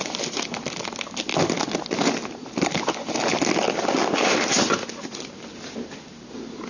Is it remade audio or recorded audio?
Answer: recorded